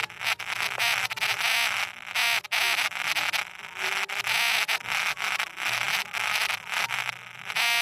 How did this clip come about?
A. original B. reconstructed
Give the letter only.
A